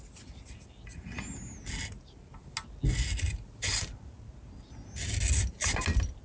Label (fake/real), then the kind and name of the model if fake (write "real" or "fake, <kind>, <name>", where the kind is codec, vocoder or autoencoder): real